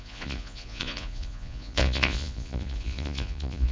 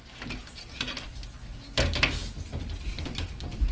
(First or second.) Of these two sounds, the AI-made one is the first